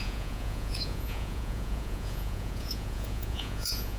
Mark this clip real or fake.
fake